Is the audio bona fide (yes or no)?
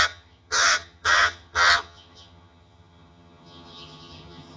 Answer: no